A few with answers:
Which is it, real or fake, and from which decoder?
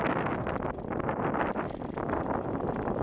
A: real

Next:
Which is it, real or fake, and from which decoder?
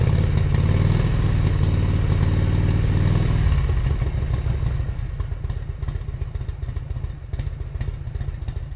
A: real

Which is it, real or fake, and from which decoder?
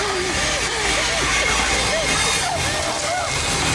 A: real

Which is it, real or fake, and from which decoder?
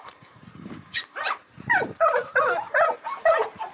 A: fake, vocoder, BigVGAN v2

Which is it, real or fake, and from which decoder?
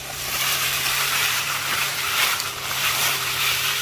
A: fake, vocoder, BigVGAN v2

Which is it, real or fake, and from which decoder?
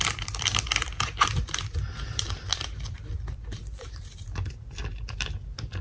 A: fake, vocoder, BigVGAN v2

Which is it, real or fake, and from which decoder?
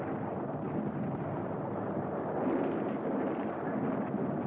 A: fake, vocoder, BigVGAN v2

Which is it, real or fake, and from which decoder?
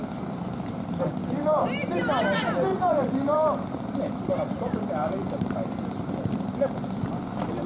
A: fake, vocoder, BigVGAN v2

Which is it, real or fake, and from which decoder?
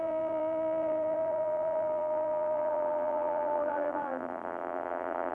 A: fake, vocoder, BigVGAN v2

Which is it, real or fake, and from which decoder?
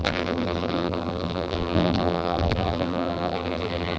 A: fake, vocoder, BigVGAN v2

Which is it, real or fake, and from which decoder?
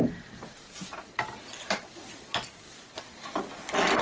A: real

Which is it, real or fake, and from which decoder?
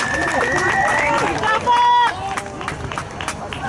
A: real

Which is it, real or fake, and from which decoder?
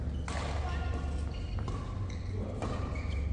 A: real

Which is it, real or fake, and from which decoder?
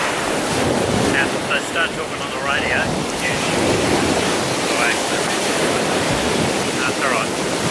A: fake, vocoder, BigVGAN v2